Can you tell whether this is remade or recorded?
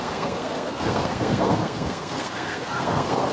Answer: remade